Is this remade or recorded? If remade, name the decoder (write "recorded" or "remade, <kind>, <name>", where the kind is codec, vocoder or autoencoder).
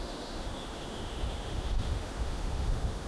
remade, autoencoder, DAC-VAE